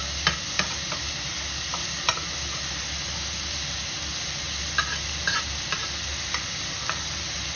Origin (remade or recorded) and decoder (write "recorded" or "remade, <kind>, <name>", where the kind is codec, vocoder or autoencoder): recorded